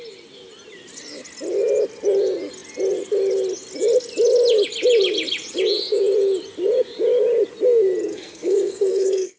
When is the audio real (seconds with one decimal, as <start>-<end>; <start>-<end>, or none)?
0.0-8.1